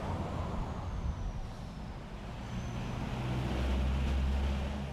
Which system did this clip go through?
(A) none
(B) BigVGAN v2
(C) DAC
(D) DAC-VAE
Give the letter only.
A